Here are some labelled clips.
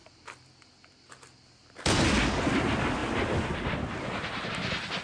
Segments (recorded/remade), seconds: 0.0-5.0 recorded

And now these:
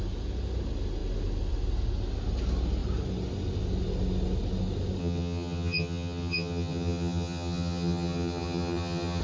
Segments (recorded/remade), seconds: 0.0-5.0 recorded; 5.0-9.2 remade